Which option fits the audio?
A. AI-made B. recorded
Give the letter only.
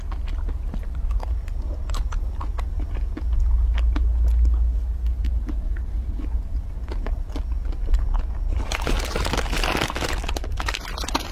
B